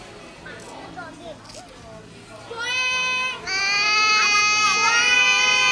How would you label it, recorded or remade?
recorded